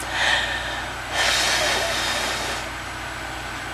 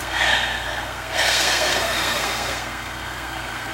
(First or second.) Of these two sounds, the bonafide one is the first